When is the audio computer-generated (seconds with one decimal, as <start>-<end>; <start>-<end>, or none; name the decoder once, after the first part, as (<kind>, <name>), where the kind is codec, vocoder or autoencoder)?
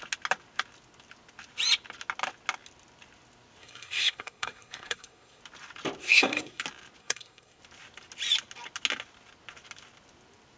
3.6-5.4 (codec, SNAC); 6.0-6.6; 7.0-7.6